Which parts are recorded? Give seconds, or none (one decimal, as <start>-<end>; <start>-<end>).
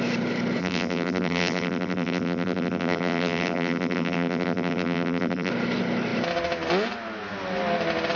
0.0-0.6; 5.5-8.2